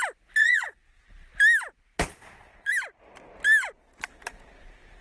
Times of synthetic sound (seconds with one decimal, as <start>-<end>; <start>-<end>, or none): 0.4-1.3; 2.1-2.7; 3.8-5.0

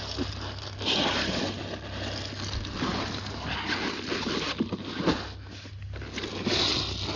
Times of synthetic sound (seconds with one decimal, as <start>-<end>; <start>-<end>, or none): none

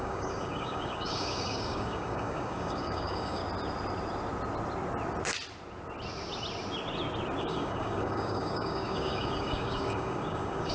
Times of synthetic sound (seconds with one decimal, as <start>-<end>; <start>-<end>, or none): 0.0-3.4; 7.4-10.7

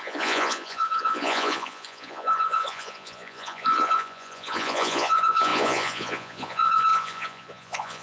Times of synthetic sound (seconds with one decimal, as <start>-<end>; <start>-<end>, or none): 0.0-8.0

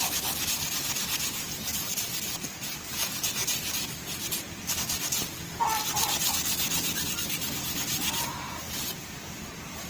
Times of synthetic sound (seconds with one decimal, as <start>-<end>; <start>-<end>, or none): none

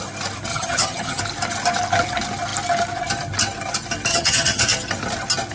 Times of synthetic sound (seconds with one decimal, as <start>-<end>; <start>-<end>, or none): 0.5-1.2; 4.1-4.6

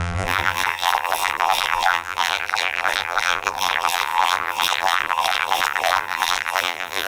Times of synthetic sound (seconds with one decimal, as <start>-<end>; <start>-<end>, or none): 0.0-7.1